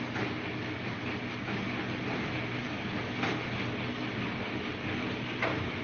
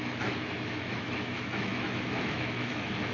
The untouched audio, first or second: first